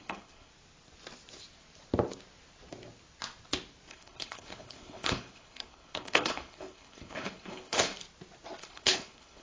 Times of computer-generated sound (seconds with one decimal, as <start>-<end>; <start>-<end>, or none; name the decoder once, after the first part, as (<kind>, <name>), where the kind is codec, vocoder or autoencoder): 0.0-0.5 (codec, HILCodec); 3.9-7.9; 8.6-9.4